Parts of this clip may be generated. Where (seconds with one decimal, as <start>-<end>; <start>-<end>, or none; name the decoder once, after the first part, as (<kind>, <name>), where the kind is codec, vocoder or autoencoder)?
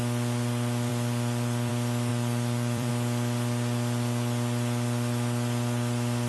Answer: 0.9-1.7 (vocoder, BigVGAN v2); 2.1-2.9